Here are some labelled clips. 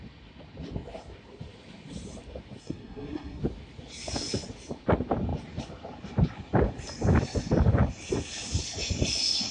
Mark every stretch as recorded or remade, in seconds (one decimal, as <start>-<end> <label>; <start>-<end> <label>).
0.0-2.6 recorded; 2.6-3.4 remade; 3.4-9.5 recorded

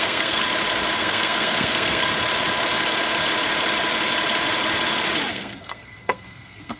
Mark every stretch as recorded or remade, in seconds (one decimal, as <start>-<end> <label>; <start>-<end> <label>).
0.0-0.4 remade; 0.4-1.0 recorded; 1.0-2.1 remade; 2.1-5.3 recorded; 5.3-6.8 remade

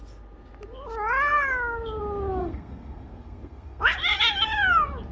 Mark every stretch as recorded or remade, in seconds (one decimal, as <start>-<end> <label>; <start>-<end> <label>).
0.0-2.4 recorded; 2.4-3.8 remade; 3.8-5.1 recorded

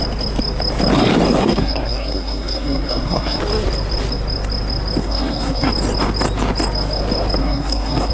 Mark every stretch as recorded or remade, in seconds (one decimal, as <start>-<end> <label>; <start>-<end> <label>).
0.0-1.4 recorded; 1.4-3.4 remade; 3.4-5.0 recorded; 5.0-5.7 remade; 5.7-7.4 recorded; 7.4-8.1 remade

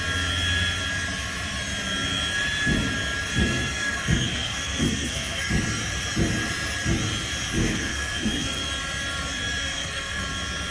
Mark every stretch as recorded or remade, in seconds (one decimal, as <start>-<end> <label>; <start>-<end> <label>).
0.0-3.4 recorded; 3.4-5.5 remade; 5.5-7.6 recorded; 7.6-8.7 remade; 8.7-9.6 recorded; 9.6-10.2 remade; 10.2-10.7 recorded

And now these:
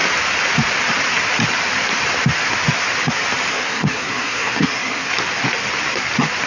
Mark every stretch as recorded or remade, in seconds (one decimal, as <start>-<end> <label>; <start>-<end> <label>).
0.0-3.5 recorded; 3.5-5.1 remade; 5.1-6.5 recorded